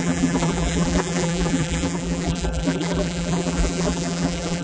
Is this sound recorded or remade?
remade